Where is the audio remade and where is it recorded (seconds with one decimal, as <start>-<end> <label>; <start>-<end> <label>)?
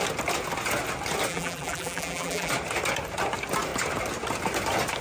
0.0-1.3 recorded; 1.3-2.5 remade; 2.5-5.0 recorded